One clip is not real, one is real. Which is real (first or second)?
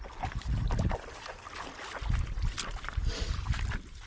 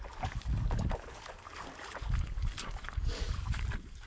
first